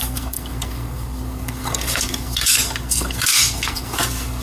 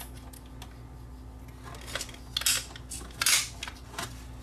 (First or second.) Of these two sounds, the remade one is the first